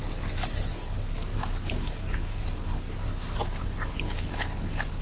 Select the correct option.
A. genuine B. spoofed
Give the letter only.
A